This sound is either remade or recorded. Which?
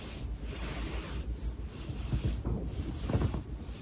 recorded